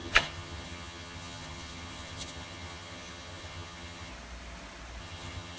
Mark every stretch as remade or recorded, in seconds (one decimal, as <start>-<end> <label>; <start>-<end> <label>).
0.0-4.1 remade; 4.1-5.0 recorded; 5.0-5.6 remade